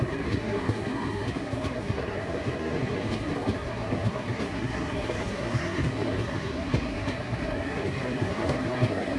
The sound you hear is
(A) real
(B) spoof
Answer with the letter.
B